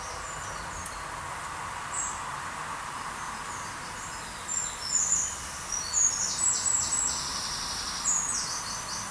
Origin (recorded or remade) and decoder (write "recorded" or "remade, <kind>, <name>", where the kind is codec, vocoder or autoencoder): recorded